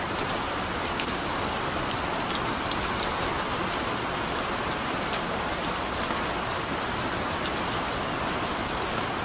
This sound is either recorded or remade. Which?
recorded